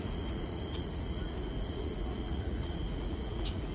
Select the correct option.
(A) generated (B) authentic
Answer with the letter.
A